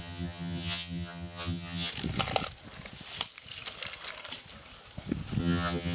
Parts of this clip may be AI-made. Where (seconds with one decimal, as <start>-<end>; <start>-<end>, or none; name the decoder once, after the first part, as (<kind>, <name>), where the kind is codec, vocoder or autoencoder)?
0.0-1.9 (vocoder, HiFi-GAN); 5.4-5.9